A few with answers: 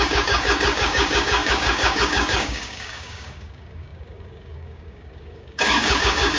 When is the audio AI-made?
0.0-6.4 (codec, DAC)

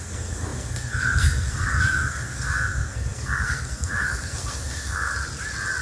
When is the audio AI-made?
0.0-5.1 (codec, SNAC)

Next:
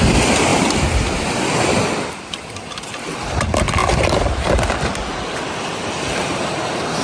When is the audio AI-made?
0.5-2.1 (vocoder, BigVGAN v2); 3.8-6.4

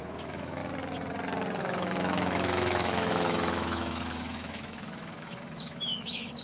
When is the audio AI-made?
0.0-0.6 (autoencoder, DAC-VAE); 1.6-6.4

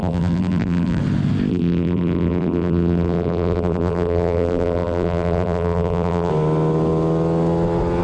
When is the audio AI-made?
0.0-1.0 (vocoder, BigVGAN v2); 1.5-6.3